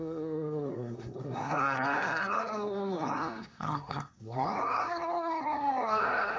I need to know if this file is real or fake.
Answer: fake